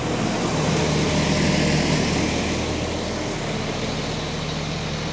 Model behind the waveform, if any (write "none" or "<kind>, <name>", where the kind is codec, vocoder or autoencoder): none